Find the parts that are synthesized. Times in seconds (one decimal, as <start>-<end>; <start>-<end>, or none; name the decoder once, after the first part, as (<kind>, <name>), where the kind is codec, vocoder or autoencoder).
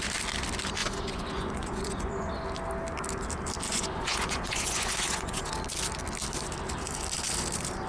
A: 0.8-2.3 (vocoder, Vocos); 3.7-5.5